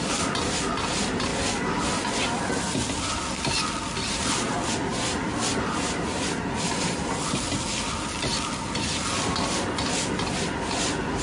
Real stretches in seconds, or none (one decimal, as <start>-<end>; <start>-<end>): 0.0-11.2